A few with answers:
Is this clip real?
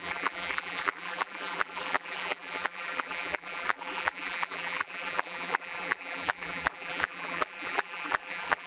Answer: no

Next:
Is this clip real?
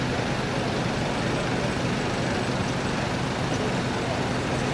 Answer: yes